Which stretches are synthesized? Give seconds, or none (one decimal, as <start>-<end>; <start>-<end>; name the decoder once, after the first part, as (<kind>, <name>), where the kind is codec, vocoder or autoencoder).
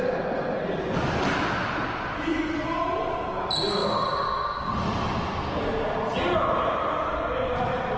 none